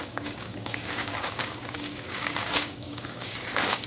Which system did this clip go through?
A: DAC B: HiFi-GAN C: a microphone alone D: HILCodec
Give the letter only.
A